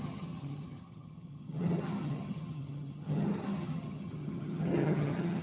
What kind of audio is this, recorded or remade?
remade